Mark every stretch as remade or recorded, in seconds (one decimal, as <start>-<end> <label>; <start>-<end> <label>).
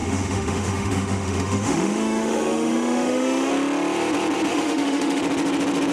0.0-3.5 remade; 3.5-4.5 recorded; 4.5-5.2 remade; 5.2-5.9 recorded